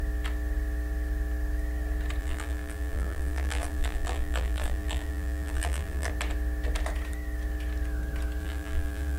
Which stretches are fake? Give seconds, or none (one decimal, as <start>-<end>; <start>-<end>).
2.2-6.1; 8.4-9.2